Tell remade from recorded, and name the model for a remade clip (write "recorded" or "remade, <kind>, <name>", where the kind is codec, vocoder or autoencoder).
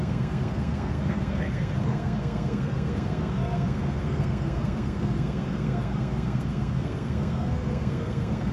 remade, codec, SNAC